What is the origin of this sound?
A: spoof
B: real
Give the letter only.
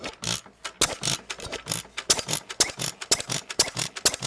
B